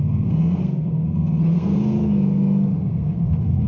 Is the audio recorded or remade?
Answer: remade